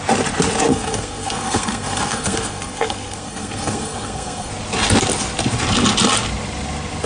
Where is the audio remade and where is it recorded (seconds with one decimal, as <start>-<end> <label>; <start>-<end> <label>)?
0.0-0.7 recorded; 0.7-4.5 remade; 4.5-7.1 recorded